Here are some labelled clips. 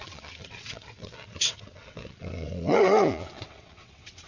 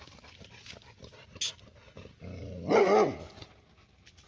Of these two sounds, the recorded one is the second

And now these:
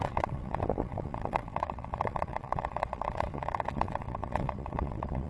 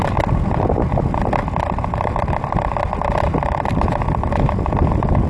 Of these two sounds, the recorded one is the second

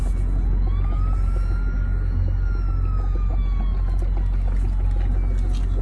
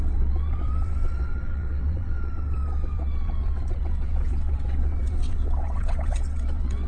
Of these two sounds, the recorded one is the first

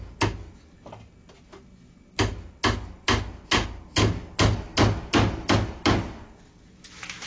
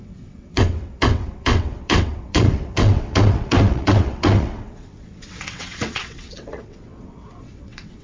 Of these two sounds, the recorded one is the first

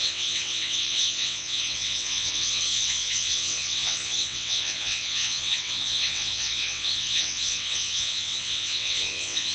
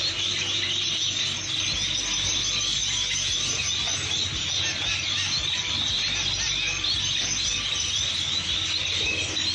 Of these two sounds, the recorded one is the second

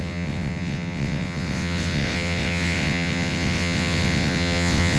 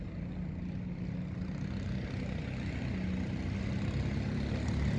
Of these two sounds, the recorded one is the second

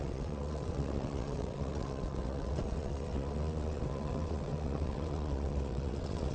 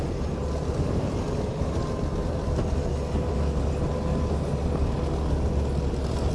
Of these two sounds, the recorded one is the second